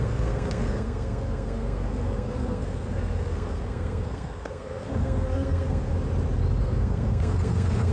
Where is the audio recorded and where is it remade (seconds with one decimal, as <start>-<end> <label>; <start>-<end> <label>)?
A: 0.0-5.9 remade; 5.9-6.6 recorded; 6.6-7.9 remade